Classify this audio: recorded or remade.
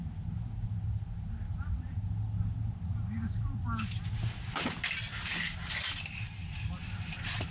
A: recorded